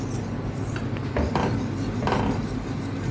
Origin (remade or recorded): recorded